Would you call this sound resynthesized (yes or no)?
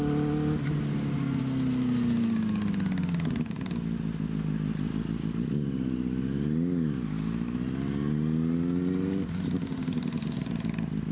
no